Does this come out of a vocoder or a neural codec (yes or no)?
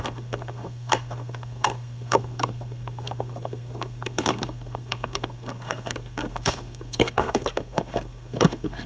yes